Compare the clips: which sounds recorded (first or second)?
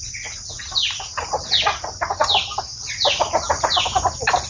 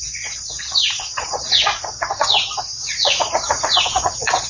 first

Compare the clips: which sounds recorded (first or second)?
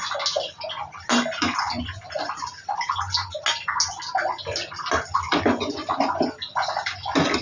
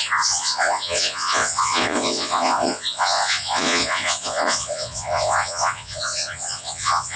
first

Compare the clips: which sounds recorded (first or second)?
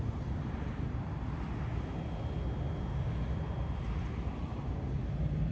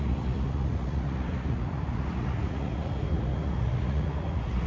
first